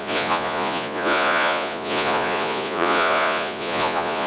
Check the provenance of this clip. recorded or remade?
remade